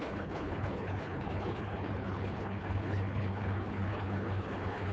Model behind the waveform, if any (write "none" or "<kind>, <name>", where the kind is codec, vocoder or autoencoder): codec, HILCodec